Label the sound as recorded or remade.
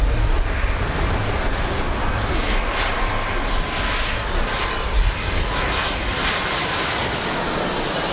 recorded